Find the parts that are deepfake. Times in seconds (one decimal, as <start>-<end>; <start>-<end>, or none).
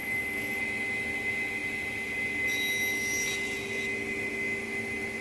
0.0-0.6